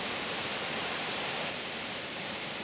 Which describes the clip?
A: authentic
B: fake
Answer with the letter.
B